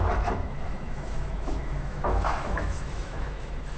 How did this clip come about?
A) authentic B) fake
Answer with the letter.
B